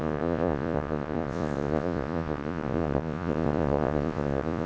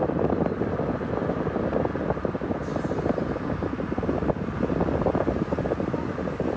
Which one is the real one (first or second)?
second